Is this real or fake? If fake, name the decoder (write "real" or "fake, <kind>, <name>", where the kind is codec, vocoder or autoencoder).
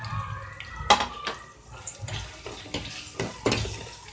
real